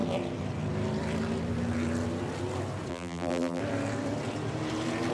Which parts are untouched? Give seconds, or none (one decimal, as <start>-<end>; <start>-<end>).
0.0-2.9; 3.6-5.1